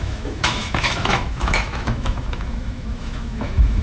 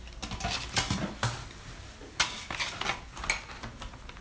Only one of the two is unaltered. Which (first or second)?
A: second